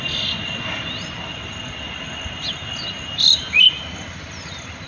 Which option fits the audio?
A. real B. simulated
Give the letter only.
A